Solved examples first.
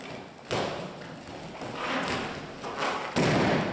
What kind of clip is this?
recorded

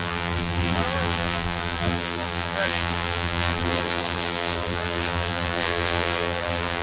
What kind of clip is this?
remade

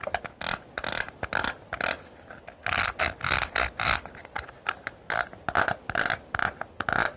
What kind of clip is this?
recorded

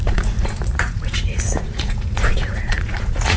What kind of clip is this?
remade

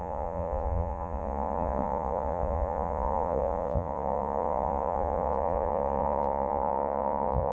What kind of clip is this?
remade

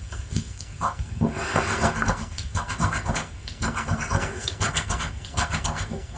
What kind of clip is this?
remade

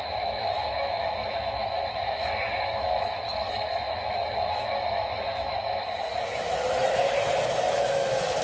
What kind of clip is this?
remade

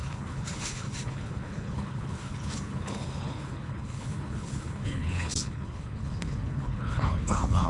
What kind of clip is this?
remade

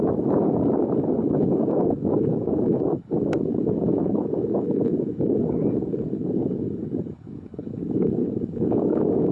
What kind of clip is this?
remade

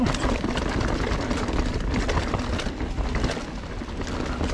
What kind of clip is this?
recorded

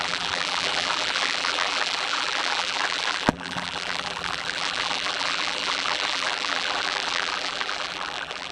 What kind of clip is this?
remade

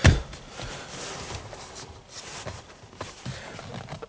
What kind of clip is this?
recorded